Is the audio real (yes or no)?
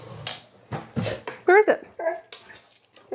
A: yes